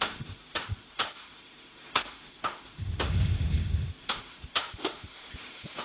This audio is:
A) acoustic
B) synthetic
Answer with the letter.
B